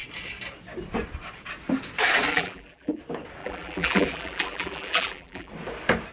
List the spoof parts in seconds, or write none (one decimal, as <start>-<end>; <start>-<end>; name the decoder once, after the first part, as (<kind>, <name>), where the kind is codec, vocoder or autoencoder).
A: 2.3-3.0 (vocoder, BigVGAN v2); 3.4-5.5